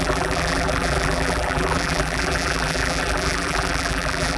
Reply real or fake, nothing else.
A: fake